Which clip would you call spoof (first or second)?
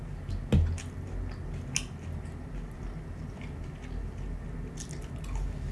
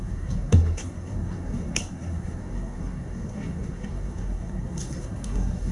second